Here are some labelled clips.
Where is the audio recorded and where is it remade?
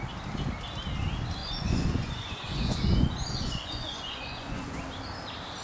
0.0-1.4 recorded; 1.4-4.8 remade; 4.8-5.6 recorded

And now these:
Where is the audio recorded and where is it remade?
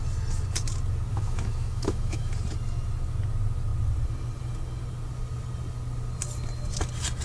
0.0-1.1 recorded; 1.1-2.3 remade; 2.3-7.2 recorded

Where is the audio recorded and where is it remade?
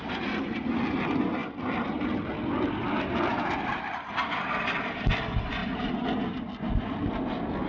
0.0-1.4 recorded; 1.4-4.1 remade; 4.1-5.6 recorded; 5.6-7.7 remade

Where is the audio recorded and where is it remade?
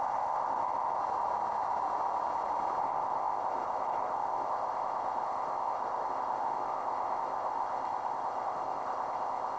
0.0-1.0 remade; 1.0-2.8 recorded; 2.8-9.6 remade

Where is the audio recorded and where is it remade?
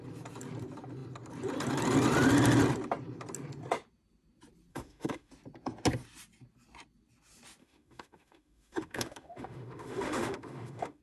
0.0-4.7 recorded; 4.7-5.3 remade; 5.3-7.6 recorded; 7.6-11.0 remade